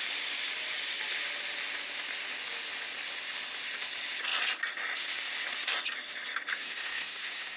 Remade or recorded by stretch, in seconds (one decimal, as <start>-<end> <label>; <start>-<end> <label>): 0.0-6.5 recorded; 6.5-7.6 remade